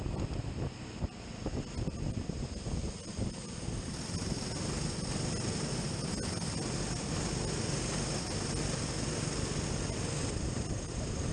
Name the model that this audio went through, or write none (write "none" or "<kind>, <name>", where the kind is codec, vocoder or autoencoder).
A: none